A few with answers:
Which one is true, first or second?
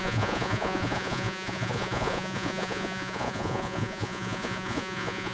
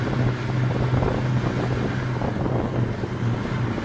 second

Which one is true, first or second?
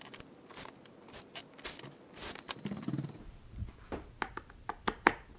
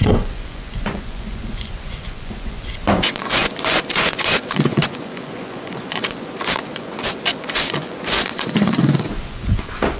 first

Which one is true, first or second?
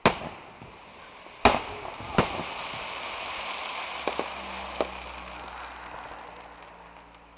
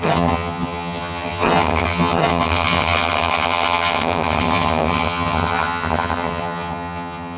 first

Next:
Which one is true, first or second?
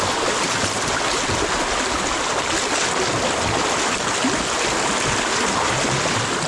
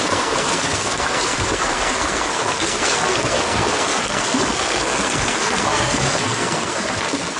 first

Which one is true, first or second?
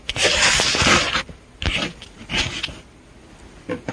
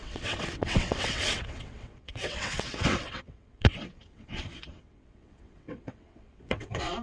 first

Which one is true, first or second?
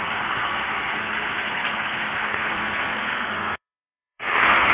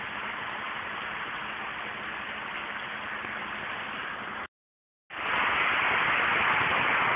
second